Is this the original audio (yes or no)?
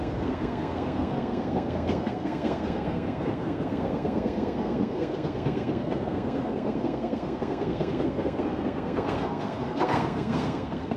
no